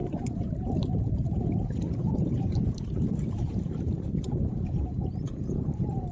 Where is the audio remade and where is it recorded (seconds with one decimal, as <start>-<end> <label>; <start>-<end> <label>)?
0.0-6.1 remade